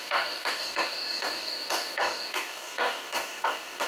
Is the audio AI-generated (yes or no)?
yes